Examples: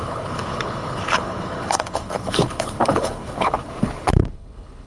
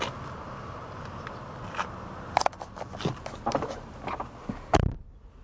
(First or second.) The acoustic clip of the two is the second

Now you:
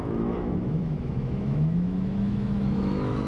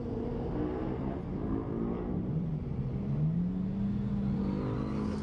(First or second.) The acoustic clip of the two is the second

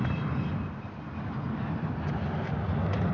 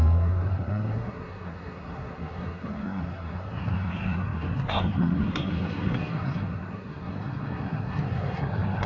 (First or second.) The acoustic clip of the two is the first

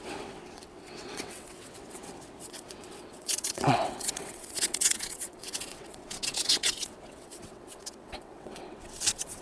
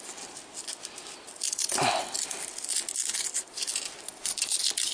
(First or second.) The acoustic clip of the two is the second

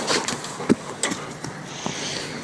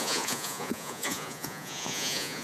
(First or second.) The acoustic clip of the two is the first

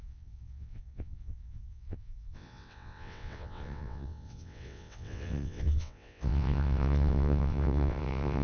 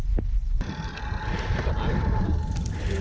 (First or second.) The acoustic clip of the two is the second